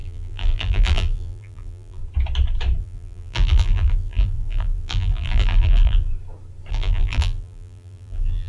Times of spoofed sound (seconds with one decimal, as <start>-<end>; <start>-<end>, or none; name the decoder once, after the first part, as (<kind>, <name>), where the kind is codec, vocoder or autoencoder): 0.0-2.0 (vocoder, BigVGAN v2); 2.8-6.1; 6.7-8.5

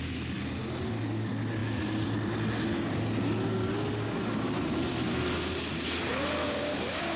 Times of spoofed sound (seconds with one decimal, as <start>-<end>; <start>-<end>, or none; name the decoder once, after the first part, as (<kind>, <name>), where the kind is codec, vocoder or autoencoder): none